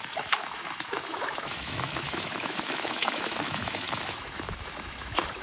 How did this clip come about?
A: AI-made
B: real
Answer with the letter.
A